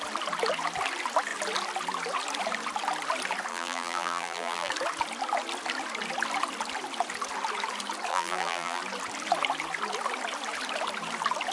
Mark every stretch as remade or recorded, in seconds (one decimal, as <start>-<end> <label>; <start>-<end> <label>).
0.0-3.5 recorded; 3.5-4.7 remade; 4.7-8.1 recorded; 8.1-8.8 remade; 8.8-11.5 recorded